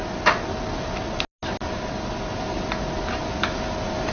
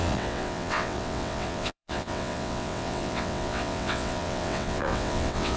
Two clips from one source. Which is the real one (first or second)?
first